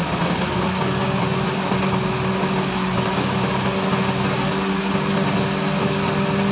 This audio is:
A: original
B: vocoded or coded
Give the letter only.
A